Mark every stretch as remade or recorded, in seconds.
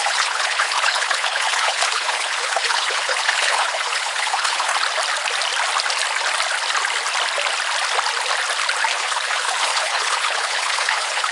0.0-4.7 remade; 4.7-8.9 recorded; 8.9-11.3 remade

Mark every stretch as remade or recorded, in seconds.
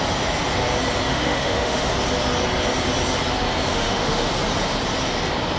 0.0-1.1 recorded; 1.1-1.9 remade; 1.9-3.7 recorded; 3.7-4.3 remade; 4.3-5.6 recorded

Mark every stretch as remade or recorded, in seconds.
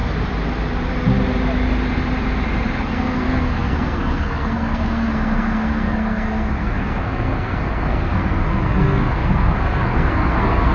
0.0-2.8 recorded; 2.8-10.7 remade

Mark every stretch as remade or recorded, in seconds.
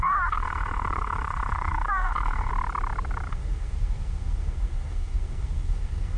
0.0-2.5 remade; 2.5-3.3 recorded; 3.3-6.2 remade